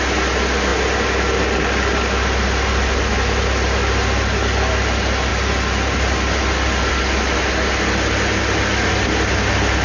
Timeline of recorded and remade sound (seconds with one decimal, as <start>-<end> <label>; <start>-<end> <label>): 0.0-9.8 recorded